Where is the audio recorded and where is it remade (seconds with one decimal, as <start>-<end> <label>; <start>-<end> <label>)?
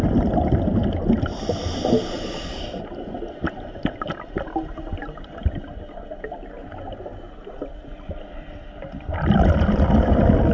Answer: 0.0-10.5 recorded